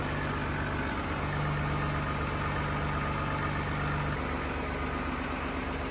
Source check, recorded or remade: recorded